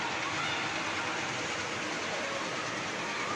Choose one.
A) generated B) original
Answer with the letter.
B